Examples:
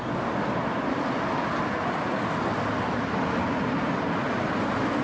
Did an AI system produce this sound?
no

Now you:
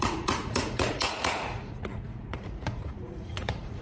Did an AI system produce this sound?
yes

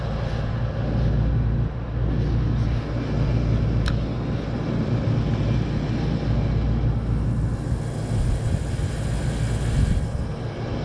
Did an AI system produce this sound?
no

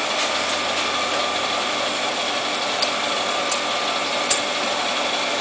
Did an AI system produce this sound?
yes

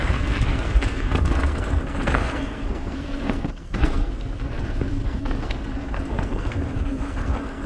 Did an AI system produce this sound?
yes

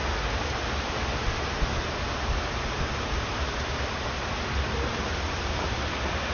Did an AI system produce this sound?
no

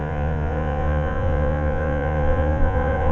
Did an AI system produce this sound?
yes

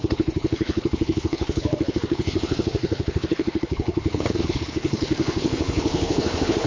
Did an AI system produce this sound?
yes